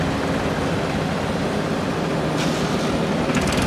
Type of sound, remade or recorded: recorded